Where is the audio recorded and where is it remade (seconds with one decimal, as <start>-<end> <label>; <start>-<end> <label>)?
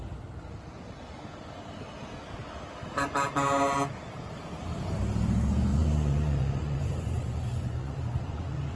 0.0-5.7 recorded; 5.7-8.8 remade